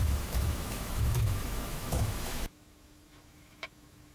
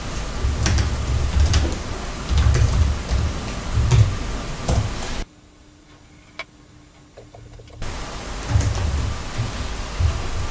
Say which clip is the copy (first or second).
first